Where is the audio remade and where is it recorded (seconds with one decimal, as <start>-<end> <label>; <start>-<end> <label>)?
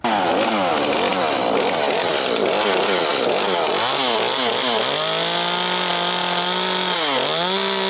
0.0-1.1 recorded; 1.1-2.1 remade; 2.1-3.1 recorded; 3.1-3.7 remade; 3.7-7.9 recorded